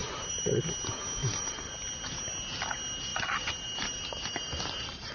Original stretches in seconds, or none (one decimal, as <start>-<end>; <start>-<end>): 0.6-1.2; 1.7-3.1